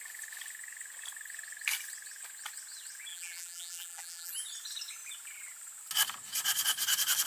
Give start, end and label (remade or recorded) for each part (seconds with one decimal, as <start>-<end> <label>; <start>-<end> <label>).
0.0-3.1 recorded; 3.1-4.3 remade; 4.3-7.3 recorded